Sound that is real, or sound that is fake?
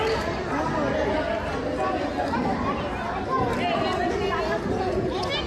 real